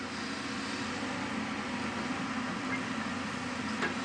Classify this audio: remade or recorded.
recorded